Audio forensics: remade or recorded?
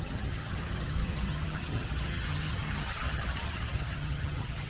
remade